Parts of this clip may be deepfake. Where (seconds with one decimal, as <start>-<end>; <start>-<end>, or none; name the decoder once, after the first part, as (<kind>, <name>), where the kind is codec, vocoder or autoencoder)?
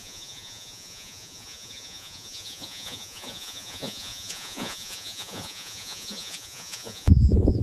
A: 0.0-7.6 (vocoder, Vocos)